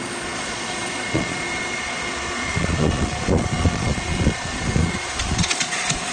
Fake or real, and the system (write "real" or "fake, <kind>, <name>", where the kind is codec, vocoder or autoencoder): fake, vocoder, Vocos